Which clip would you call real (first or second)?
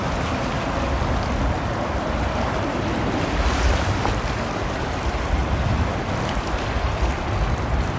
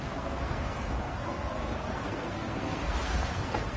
first